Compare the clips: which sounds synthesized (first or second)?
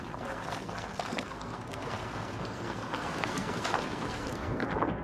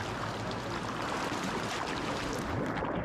first